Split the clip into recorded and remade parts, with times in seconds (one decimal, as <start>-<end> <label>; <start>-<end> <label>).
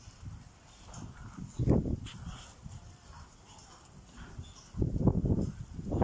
0.0-2.6 recorded; 2.6-3.6 remade; 3.6-4.5 recorded; 4.5-5.5 remade; 5.5-6.0 recorded